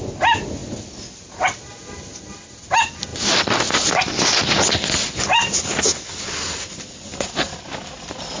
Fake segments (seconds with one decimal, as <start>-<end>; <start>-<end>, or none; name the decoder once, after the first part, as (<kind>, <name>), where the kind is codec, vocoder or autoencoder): none